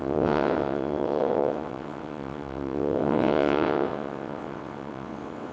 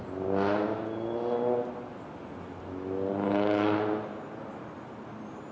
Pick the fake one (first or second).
first